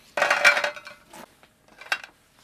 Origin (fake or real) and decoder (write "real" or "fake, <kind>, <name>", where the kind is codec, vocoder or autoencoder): real